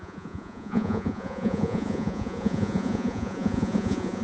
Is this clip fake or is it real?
fake